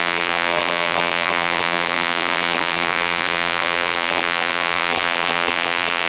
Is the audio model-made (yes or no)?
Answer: yes